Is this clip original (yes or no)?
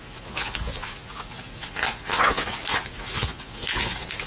no